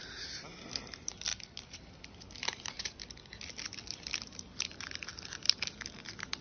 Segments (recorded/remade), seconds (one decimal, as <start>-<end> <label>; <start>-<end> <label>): 0.0-1.3 recorded; 1.3-1.8 remade; 1.8-2.4 recorded; 2.4-3.0 remade; 3.0-6.4 recorded